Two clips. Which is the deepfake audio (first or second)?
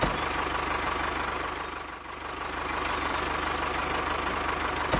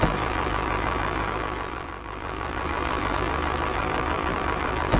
second